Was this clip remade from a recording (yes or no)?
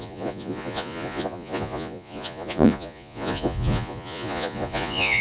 yes